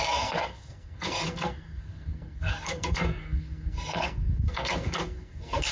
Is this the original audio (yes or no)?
no